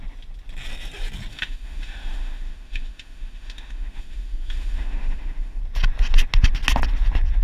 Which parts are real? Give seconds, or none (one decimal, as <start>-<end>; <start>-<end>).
0.0-1.3; 5.6-7.4

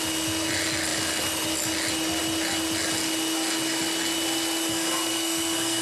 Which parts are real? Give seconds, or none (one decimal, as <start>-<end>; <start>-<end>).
0.0-4.7

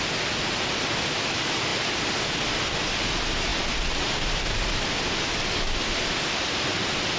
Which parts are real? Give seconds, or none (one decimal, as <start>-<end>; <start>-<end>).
0.0-7.2

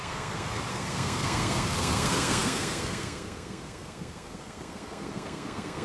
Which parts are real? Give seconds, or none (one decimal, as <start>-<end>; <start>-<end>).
none

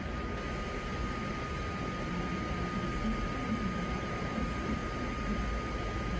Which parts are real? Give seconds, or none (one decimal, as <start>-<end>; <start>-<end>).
0.0-6.2

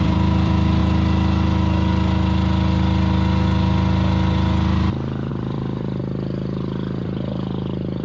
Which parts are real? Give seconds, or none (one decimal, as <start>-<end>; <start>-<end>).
0.8-5.3; 6.0-7.0

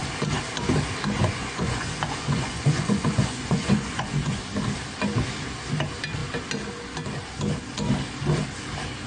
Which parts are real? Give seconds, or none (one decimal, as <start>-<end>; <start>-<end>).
0.0-1.2; 4.4-9.1

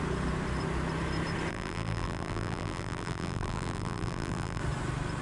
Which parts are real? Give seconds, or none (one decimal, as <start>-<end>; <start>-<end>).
0.0-1.5; 4.6-5.2